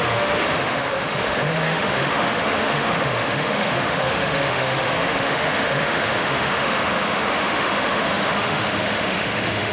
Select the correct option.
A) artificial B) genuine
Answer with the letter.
A